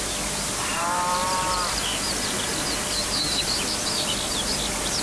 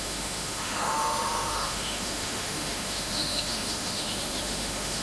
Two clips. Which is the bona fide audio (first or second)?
first